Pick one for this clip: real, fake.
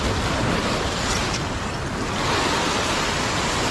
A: real